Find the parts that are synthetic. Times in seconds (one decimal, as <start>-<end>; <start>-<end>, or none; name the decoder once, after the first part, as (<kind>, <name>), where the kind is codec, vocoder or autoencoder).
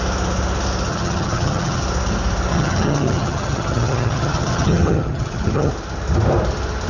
0.9-1.8 (vocoder, HiFi-GAN); 2.5-5.7